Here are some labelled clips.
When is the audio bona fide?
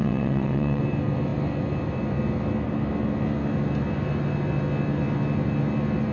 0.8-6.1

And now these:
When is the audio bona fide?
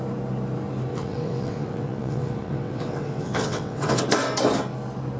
0.0-0.9; 4.0-5.2